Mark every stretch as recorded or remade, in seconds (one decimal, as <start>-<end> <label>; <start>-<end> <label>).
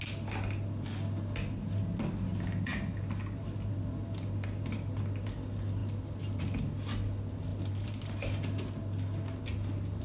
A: 0.0-7.5 recorded; 7.5-8.1 remade; 8.1-10.0 recorded